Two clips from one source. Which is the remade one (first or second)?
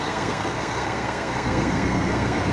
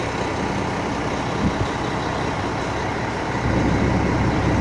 first